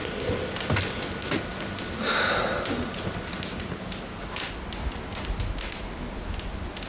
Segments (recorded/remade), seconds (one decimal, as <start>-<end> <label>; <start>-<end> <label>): 0.0-6.9 recorded